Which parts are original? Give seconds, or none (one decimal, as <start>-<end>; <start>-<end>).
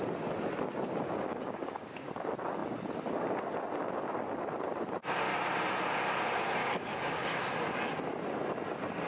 0.0-1.3; 2.1-6.6; 7.5-9.1